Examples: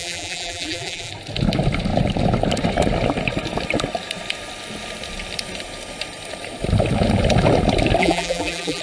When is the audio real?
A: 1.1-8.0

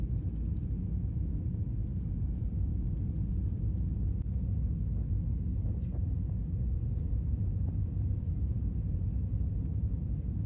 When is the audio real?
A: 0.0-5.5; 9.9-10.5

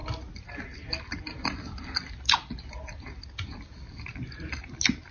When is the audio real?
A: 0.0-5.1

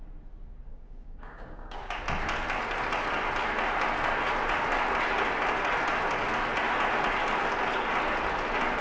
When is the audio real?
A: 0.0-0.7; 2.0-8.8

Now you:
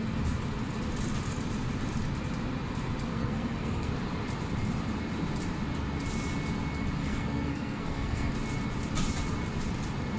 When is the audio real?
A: 0.0-3.1; 3.9-7.0; 8.3-10.2

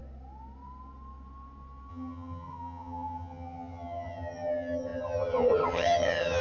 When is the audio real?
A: 0.0-1.9